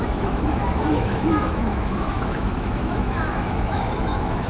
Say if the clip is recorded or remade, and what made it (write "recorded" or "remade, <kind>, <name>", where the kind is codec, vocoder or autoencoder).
remade, autoencoder, DAC-VAE